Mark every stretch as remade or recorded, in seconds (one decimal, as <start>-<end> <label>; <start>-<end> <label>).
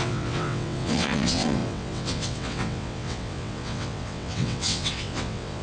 0.0-5.6 remade